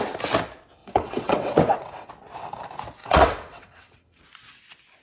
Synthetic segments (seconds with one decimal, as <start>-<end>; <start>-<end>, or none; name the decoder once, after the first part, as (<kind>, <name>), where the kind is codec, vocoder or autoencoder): 0.8-2.1 (vocoder, WaveNeXt); 3.0-4.2